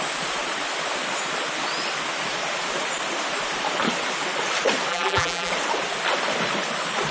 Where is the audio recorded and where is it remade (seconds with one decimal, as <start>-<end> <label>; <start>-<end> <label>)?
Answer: 0.0-4.9 recorded; 4.9-5.5 remade; 5.5-7.1 recorded